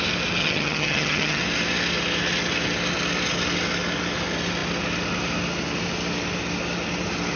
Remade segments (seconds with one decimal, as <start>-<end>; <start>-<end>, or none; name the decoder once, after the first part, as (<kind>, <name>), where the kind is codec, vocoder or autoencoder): 0.4-1.4 (vocoder, HiFi-GAN)